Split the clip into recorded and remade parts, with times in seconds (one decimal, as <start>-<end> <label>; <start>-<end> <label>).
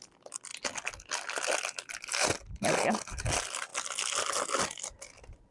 0.0-5.5 recorded